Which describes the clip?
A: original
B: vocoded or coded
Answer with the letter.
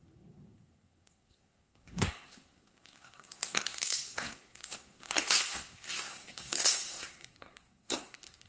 B